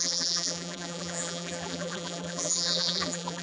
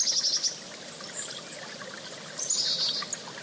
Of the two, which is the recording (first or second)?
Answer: second